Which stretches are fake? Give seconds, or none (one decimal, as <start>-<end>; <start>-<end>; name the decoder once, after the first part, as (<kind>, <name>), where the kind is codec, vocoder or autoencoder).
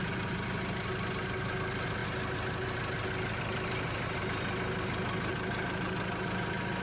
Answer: none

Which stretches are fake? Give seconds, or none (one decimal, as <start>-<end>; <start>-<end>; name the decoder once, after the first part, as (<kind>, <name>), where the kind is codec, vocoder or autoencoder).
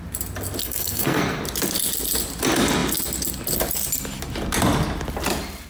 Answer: 0.6-1.4 (codec, SNAC)